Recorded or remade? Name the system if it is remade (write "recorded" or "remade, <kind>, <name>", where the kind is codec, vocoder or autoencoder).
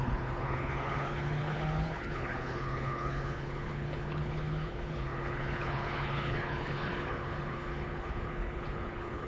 remade, codec, HILCodec